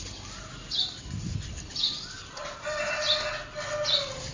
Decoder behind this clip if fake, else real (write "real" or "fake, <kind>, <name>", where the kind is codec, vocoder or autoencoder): real